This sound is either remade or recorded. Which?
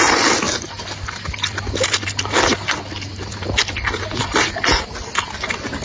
recorded